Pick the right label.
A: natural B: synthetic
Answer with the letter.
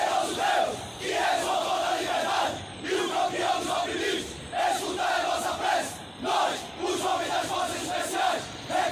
B